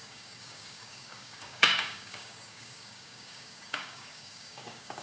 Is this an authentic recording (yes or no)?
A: no